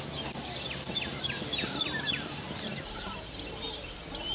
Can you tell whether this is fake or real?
real